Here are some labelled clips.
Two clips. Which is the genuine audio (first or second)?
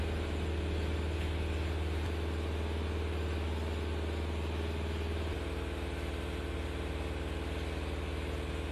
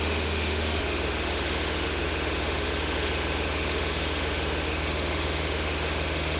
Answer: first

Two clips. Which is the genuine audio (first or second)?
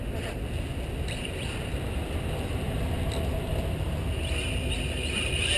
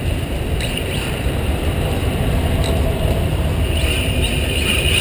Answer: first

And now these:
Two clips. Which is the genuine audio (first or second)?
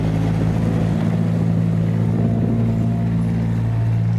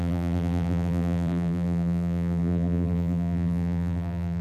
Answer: first